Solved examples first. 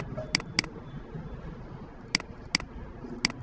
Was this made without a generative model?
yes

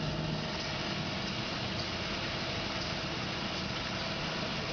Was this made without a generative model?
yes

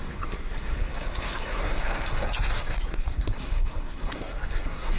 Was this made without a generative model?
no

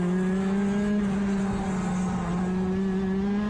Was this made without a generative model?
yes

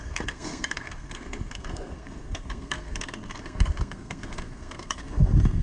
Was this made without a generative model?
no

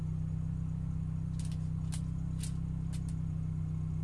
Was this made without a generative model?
yes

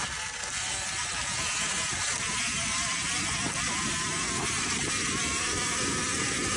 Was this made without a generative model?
yes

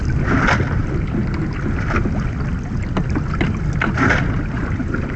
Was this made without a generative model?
yes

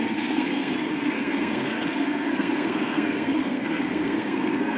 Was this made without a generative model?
no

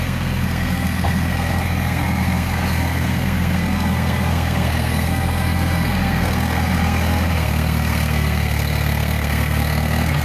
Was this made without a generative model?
no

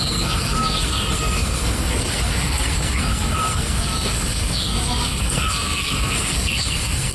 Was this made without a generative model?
no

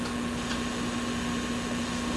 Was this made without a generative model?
yes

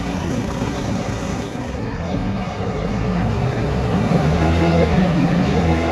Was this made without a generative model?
no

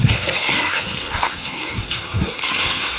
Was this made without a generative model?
no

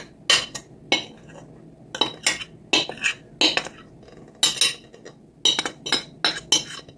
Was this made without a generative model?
yes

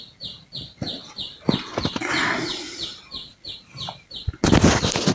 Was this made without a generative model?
yes